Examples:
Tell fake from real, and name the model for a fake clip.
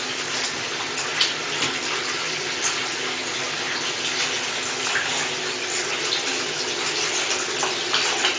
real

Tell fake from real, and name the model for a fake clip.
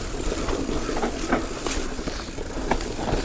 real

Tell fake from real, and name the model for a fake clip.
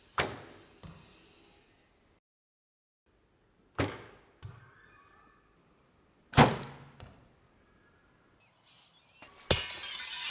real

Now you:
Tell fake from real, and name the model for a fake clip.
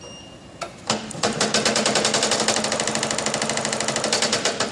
real